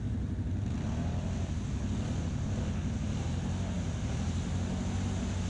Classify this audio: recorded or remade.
recorded